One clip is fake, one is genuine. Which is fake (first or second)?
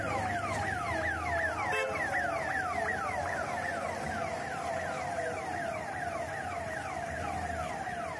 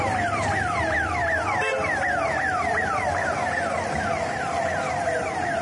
second